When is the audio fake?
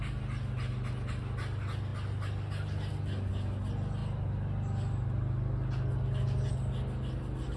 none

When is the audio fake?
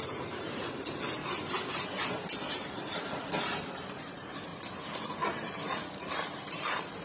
0.0-1.2 (vocoder, BigVGAN v2); 2.2-4.5; 5.9-7.0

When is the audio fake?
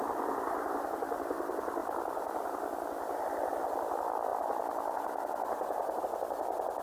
1.8-3.6 (vocoder, BigVGAN v2); 4.3-6.0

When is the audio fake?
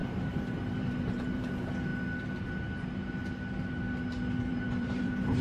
0.0-1.5 (vocoder, BigVGAN v2); 4.5-5.4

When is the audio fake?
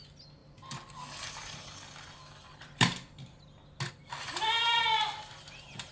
none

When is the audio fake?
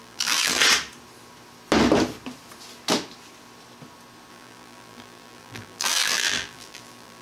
0.0-0.6 (vocoder, BigVGAN v2); 4.3-7.2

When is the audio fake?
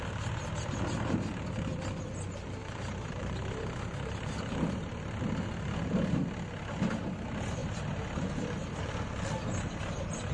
2.6-5.2 (vocoder, BigVGAN v2)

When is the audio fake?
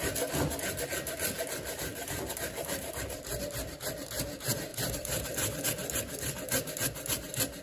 1.9-3.0 (vocoder, BigVGAN v2); 4.7-5.6